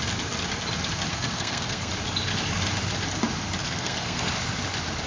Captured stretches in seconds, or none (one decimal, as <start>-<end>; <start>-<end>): 0.0-1.1; 1.9-3.6; 4.3-5.1